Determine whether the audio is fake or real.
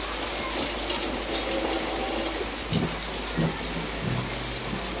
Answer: real